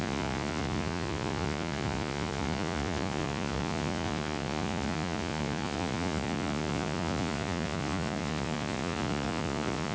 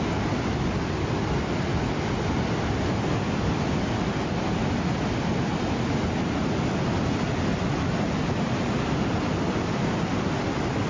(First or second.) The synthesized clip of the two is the first